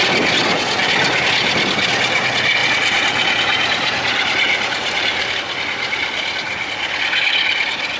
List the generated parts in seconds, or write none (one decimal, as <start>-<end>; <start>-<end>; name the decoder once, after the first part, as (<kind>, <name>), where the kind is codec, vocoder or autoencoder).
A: 2.6-5.4 (vocoder, BigVGAN v2); 6.0-6.7